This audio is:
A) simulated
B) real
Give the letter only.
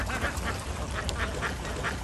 B